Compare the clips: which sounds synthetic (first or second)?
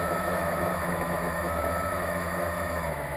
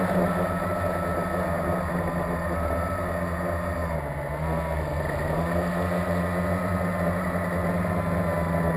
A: first